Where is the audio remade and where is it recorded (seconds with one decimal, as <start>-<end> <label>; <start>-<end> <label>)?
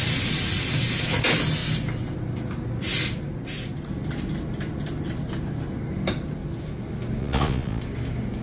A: 0.0-7.2 recorded; 7.2-7.8 remade; 7.8-8.4 recorded